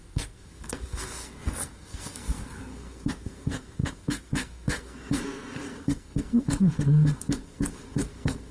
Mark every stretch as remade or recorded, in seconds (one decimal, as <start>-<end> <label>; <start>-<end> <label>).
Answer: 0.0-8.5 remade